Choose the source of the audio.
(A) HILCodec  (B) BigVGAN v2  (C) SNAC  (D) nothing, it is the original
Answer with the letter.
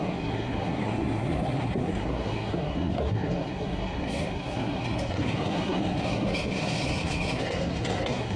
C